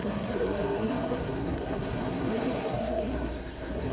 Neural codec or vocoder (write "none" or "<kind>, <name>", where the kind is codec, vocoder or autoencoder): codec, SNAC